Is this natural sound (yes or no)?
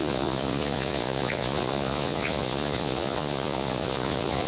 no